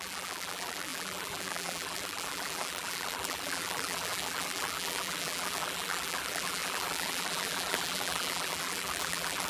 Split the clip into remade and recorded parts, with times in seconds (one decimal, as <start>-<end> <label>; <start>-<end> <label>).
0.0-9.5 remade